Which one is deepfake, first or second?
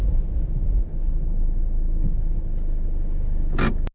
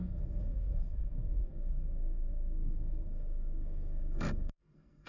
second